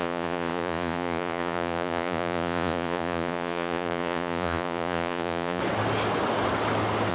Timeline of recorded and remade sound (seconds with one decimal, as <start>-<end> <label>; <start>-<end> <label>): 0.0-5.6 remade; 5.6-7.1 recorded